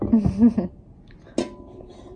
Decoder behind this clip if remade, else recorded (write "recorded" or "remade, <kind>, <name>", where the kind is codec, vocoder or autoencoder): recorded